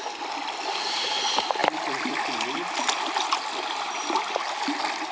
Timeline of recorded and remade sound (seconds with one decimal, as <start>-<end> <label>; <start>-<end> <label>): 0.0-5.1 recorded